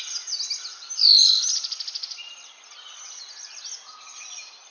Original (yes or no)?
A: yes